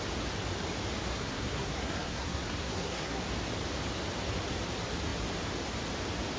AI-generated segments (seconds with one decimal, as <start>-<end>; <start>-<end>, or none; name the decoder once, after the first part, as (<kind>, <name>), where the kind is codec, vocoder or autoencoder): 1.1-3.2 (codec, SNAC)